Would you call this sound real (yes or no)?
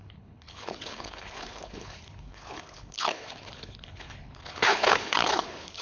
no